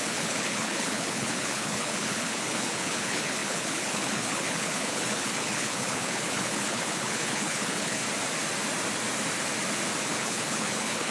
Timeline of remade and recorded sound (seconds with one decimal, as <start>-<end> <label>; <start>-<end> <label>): 0.0-8.0 remade; 8.0-10.1 recorded; 10.1-11.1 remade